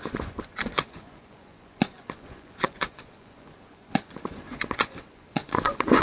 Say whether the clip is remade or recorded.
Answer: remade